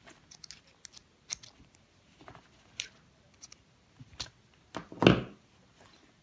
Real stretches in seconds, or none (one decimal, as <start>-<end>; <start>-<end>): 0.0-6.2